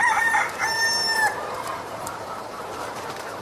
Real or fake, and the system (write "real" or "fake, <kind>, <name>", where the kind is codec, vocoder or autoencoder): fake, vocoder, BigVGAN v2